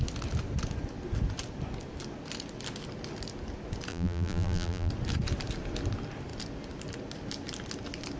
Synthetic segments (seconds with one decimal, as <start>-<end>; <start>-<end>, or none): 3.9-4.9